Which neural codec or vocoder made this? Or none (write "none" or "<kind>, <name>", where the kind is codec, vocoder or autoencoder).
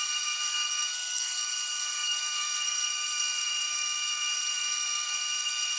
codec, SNAC